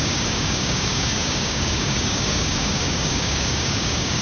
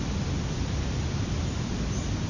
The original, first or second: second